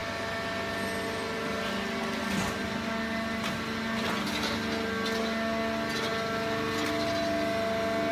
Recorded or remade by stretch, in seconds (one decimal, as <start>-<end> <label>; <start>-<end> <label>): 0.0-8.1 recorded